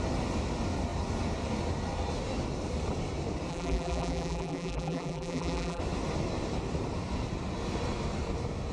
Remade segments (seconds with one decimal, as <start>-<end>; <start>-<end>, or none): 3.5-5.8